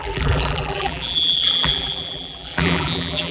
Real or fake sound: fake